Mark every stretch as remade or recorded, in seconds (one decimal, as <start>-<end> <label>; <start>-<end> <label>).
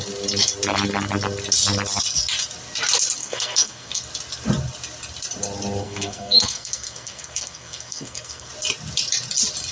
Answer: 0.0-3.2 recorded; 3.2-4.0 remade; 4.0-5.8 recorded; 5.8-8.5 remade; 8.5-9.7 recorded